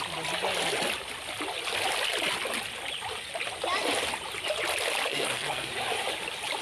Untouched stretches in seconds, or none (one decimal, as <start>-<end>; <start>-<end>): 0.0-5.1; 5.7-6.6